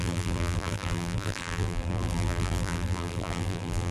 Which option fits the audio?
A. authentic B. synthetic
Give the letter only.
B